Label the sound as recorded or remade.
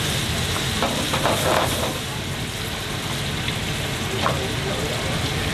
recorded